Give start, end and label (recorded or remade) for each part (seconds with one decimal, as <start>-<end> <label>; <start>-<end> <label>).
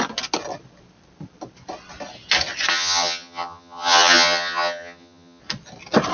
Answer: 0.0-2.7 recorded; 2.7-5.4 remade; 5.4-6.1 recorded